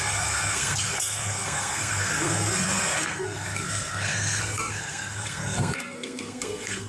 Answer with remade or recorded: remade